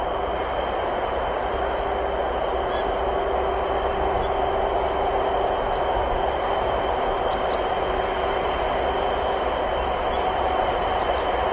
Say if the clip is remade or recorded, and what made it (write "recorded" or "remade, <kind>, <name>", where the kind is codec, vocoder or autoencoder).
recorded